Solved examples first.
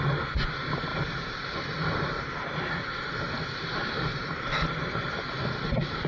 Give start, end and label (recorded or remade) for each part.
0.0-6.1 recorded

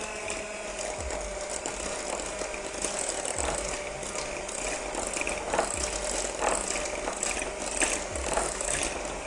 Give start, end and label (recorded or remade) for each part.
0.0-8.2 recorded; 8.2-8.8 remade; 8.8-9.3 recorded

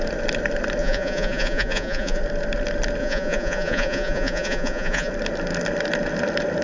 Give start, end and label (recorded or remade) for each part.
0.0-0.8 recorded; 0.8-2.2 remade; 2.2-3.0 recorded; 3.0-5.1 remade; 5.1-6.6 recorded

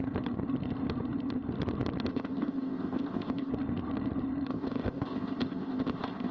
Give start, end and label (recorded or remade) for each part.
0.0-2.1 recorded; 2.1-3.5 remade; 3.5-4.5 recorded; 4.5-6.3 remade